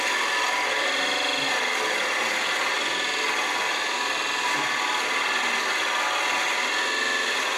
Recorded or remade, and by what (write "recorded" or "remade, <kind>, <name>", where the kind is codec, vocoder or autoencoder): recorded